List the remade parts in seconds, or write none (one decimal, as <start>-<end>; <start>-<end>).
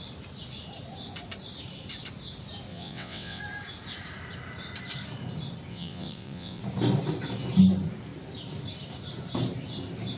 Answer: 2.7-3.4; 5.7-6.6